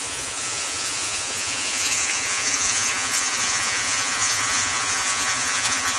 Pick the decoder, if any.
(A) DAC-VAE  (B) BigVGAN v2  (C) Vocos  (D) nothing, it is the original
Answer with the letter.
C